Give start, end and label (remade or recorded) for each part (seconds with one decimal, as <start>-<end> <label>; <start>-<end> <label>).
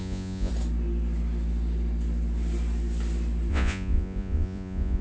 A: 0.0-0.5 remade; 0.5-3.5 recorded; 3.5-5.0 remade